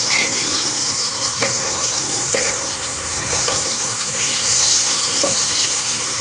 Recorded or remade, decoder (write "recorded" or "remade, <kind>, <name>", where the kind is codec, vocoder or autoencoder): remade, codec, SNAC